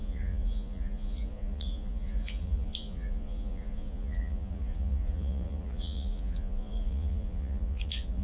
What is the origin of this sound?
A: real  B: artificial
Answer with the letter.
B